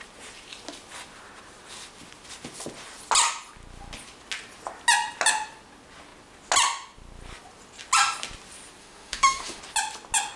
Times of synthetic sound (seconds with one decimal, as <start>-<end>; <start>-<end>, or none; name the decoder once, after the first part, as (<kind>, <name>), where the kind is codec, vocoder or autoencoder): 8.8-9.6 (autoencoder, DAC-VAE)